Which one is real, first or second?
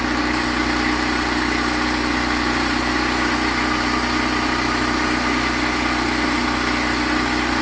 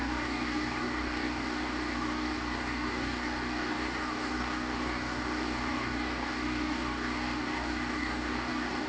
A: first